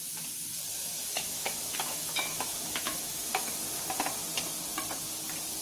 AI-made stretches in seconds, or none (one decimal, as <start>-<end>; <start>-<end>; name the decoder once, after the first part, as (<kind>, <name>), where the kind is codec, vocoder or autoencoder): 0.8-3.5 (autoencoder, DAC-VAE)